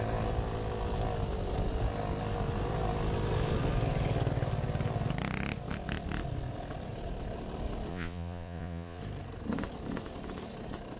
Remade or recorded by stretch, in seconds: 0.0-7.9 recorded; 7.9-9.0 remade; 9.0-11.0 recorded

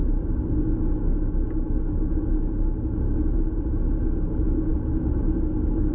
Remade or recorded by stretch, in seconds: 0.0-5.9 recorded

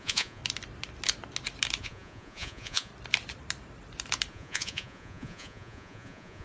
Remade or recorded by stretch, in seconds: 0.0-0.4 remade; 0.4-1.8 recorded; 1.8-2.9 remade; 2.9-4.3 recorded; 4.3-6.4 remade

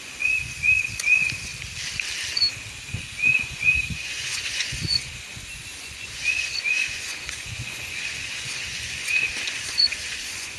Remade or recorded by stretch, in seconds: 0.0-1.5 remade; 1.5-2.9 recorded; 2.9-10.6 remade

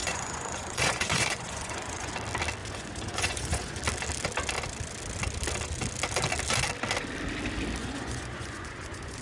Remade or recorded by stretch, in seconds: 0.0-2.1 remade; 2.1-2.6 recorded; 2.6-3.8 remade; 3.8-7.8 recorded; 7.8-9.2 remade

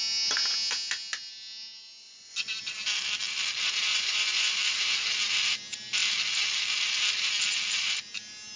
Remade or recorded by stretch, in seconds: 0.0-2.0 recorded; 2.0-2.5 remade; 2.5-3.9 recorded; 3.9-4.6 remade; 4.6-8.6 recorded

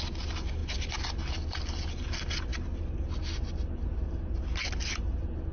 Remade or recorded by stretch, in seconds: 0.0-5.5 recorded

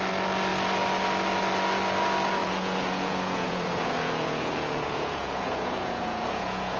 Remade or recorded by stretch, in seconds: 0.0-2.4 recorded; 2.4-6.8 remade